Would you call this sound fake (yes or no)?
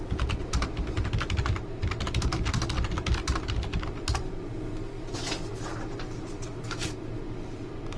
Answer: no